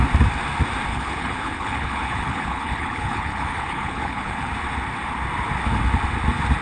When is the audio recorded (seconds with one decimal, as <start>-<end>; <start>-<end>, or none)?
0.0-0.9; 4.5-6.6